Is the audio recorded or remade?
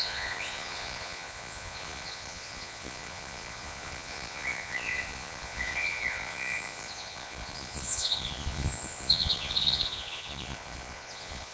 remade